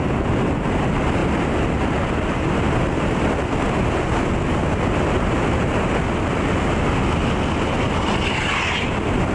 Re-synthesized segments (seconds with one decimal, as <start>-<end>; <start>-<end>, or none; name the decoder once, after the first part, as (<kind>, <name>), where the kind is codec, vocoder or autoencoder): none

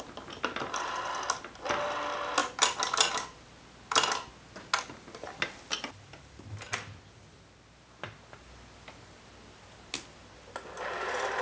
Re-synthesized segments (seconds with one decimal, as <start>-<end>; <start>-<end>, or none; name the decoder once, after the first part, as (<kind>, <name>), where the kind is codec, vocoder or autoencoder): none